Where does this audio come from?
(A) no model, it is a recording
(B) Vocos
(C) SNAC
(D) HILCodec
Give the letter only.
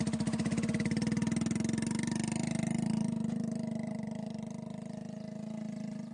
A